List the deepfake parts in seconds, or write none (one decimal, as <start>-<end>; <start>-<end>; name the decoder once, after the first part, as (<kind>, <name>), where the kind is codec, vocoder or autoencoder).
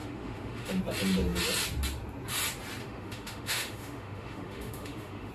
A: 0.0-0.8 (autoencoder, DAC-VAE); 2.8-5.3